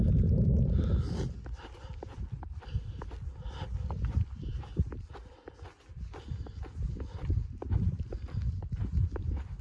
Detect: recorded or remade recorded